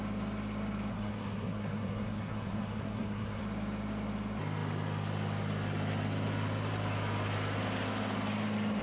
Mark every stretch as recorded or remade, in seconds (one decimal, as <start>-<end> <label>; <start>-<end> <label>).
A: 0.0-0.9 recorded; 0.9-3.4 remade; 3.4-8.8 recorded